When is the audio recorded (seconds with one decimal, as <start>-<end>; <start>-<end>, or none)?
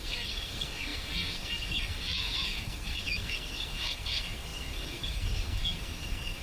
none